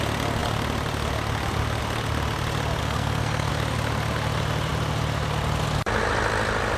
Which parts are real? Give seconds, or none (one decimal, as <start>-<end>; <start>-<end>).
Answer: 0.0-2.8; 3.5-6.8